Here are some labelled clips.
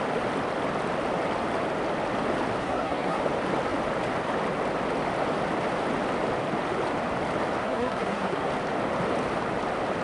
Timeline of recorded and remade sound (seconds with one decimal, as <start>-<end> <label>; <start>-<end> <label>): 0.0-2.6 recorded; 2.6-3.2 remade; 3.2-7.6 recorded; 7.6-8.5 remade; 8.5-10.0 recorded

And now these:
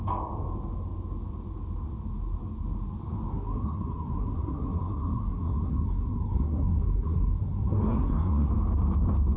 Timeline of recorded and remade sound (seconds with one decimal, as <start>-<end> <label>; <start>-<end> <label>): 0.0-3.3 recorded; 3.3-8.5 remade; 8.5-9.4 recorded

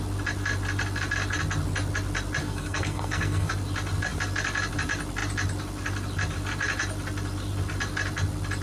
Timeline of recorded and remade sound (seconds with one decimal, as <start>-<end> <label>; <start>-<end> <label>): 0.0-2.4 recorded; 2.4-3.5 remade; 3.5-8.6 recorded

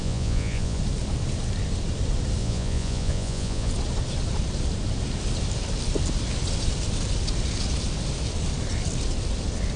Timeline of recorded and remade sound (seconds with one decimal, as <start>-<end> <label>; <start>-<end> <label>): 0.0-0.8 remade; 0.8-2.4 recorded; 2.4-3.7 remade; 3.7-9.8 recorded

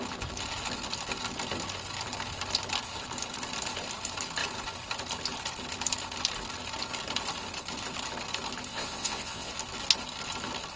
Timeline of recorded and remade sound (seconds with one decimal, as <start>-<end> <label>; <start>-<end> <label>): 0.0-8.7 recorded; 8.7-9.5 remade; 9.5-10.8 recorded